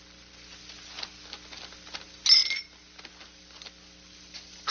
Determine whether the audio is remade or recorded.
recorded